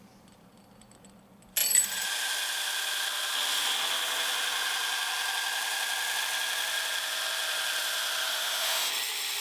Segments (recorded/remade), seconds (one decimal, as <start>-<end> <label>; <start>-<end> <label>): 0.0-8.3 recorded; 8.3-8.9 remade; 8.9-9.4 recorded